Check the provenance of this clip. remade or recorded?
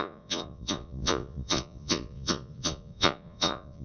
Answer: remade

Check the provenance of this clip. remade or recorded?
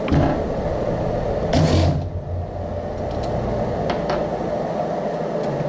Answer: recorded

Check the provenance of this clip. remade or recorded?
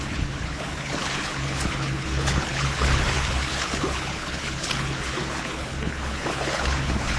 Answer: remade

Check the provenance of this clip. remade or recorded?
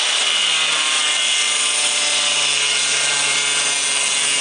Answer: recorded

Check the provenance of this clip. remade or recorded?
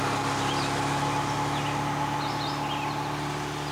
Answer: recorded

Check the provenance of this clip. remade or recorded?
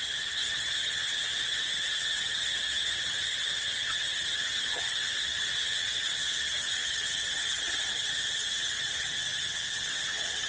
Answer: remade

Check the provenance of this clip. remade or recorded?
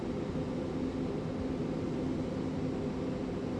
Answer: recorded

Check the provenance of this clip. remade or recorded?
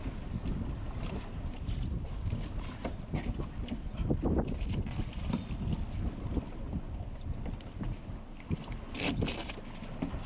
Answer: recorded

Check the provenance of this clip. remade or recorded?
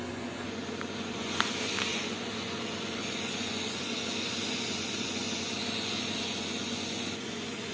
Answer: remade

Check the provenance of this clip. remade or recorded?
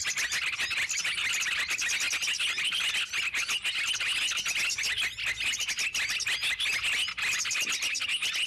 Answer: recorded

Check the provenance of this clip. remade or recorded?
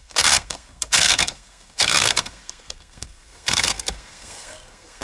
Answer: remade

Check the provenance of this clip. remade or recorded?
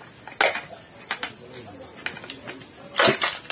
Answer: recorded